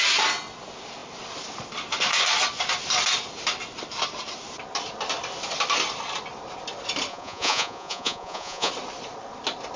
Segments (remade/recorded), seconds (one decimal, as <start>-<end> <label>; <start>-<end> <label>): 0.0-7.1 recorded; 7.1-8.7 remade; 8.7-9.8 recorded